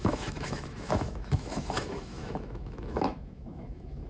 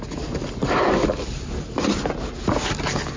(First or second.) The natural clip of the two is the second